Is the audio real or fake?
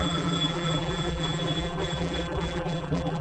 fake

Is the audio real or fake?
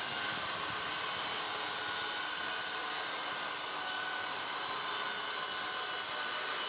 real